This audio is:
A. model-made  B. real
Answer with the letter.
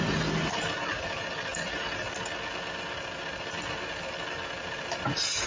B